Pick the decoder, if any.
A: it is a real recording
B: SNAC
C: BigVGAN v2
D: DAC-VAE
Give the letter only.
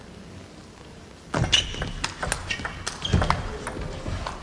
A